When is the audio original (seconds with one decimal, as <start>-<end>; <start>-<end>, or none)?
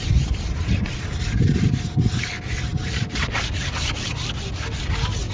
0.0-5.3